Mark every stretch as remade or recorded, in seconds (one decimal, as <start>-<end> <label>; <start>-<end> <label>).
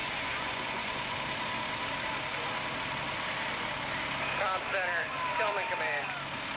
0.0-1.2 remade; 1.2-6.6 recorded